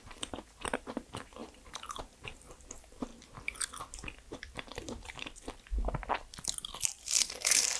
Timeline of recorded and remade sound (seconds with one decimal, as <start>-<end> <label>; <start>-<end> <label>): 0.0-3.1 remade; 3.1-6.8 recorded; 6.8-7.8 remade

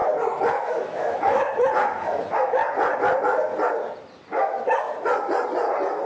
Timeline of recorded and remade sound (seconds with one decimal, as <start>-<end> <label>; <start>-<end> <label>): 0.0-0.5 recorded; 0.5-2.6 remade; 2.6-6.1 recorded